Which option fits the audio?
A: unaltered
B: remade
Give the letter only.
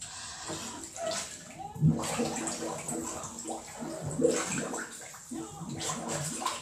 A